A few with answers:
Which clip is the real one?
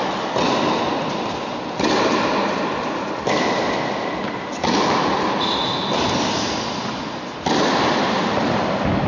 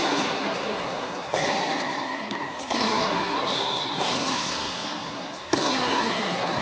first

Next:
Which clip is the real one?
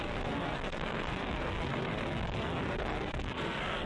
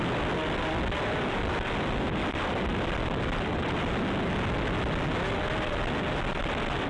second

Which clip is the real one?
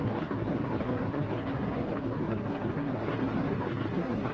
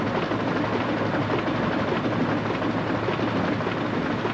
second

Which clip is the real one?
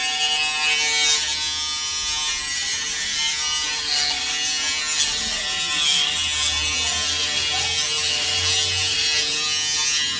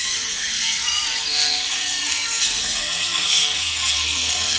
first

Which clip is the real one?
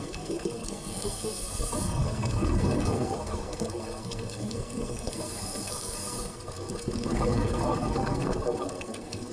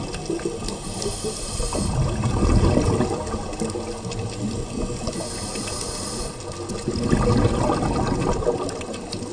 second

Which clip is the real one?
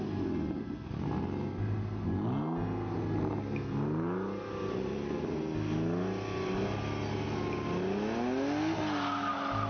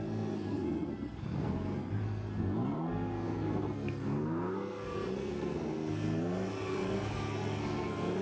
first